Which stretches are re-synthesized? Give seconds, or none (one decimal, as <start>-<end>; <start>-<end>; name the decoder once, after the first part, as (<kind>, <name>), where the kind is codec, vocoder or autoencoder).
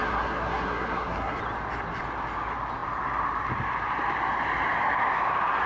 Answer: 0.0-1.4 (codec, SNAC)